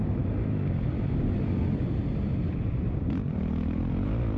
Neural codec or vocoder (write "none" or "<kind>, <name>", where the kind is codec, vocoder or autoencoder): none